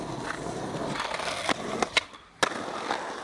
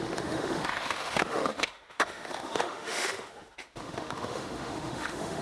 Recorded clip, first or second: first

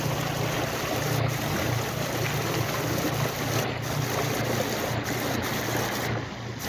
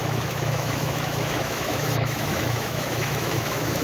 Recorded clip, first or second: first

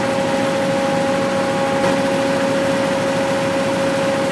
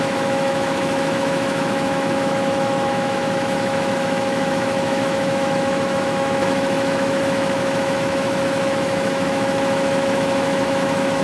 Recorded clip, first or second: first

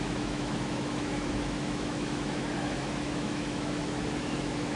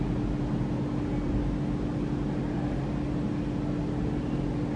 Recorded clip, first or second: second